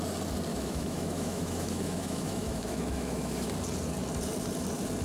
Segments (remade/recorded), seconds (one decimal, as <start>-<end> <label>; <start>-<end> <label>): 0.0-0.5 recorded; 0.5-3.5 remade; 3.5-5.0 recorded